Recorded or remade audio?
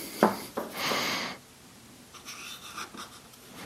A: recorded